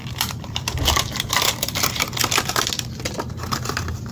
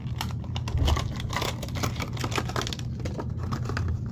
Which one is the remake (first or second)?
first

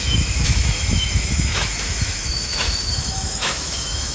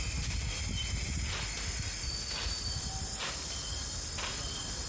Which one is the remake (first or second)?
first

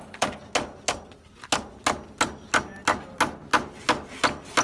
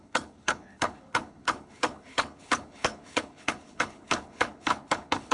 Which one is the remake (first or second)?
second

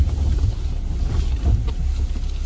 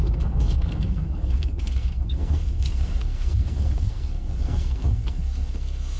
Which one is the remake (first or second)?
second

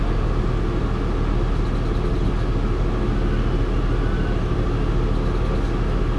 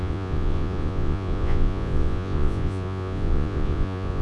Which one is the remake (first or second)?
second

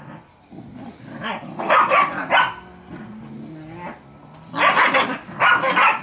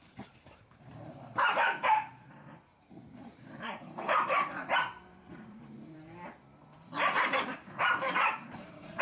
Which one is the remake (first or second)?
second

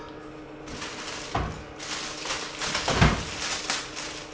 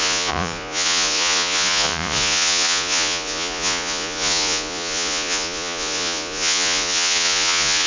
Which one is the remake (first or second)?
second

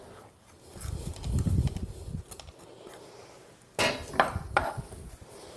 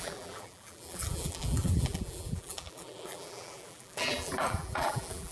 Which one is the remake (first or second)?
second